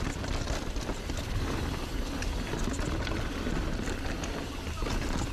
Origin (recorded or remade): recorded